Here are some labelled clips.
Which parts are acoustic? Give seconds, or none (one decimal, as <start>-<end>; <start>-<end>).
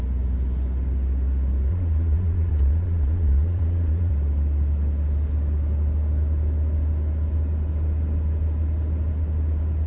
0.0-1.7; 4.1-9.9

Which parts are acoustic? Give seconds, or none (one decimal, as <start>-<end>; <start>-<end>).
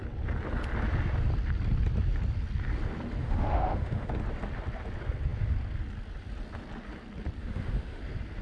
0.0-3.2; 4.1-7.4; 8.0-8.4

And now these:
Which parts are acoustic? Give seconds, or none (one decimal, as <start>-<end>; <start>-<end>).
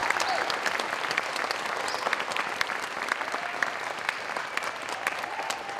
0.0-5.8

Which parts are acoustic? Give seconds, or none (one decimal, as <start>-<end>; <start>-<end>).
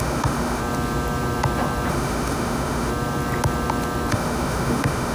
0.6-1.9; 2.9-4.1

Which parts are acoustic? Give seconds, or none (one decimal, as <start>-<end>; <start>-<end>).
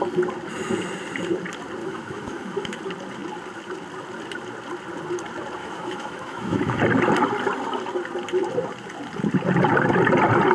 0.0-1.8; 2.8-5.6; 6.8-10.5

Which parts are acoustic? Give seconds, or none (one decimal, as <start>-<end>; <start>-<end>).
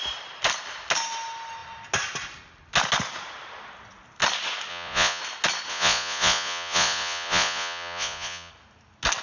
0.0-4.7; 5.2-5.7; 8.5-9.2